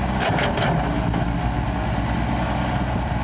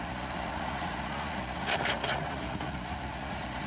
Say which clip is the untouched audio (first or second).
first